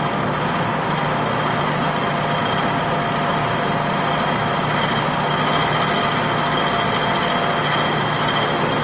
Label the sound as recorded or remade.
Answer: recorded